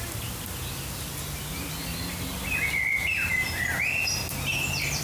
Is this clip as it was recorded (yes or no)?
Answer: yes